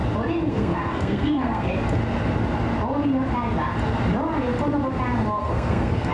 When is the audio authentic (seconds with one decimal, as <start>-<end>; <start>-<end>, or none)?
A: 0.0-0.5; 1.7-5.4